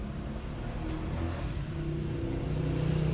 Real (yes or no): yes